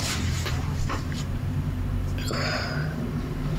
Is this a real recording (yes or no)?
no